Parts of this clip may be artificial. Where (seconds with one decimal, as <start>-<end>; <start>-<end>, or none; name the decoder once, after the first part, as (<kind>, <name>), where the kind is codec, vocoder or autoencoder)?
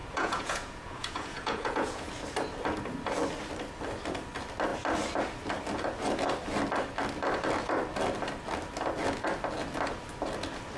0.0-2.1 (vocoder, Vocos)